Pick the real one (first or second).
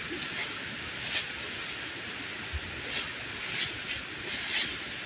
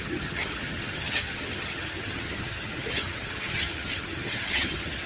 first